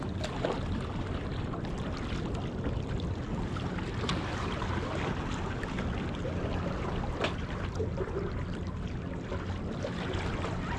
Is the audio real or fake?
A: real